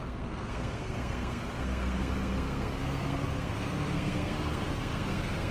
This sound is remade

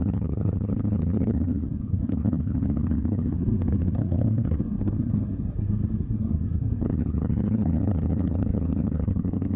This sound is remade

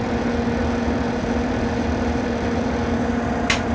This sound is recorded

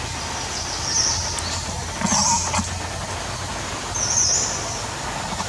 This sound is recorded